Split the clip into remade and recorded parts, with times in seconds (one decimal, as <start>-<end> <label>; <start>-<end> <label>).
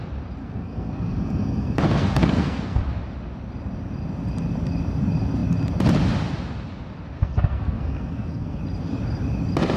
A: 0.0-0.4 recorded; 0.4-2.8 remade; 2.8-7.2 recorded; 7.2-8.6 remade; 8.6-9.8 recorded